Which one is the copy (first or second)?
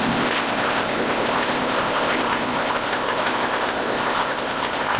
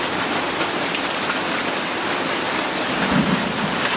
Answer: first